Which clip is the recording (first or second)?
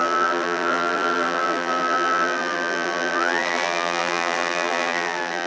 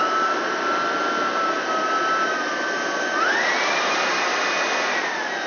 second